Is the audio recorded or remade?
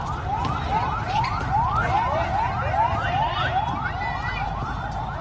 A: recorded